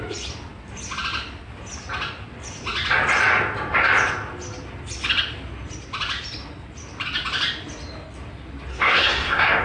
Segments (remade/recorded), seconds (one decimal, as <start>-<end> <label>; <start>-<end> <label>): 0.0-8.7 recorded; 8.7-9.6 remade